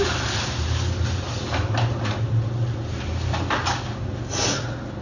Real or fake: real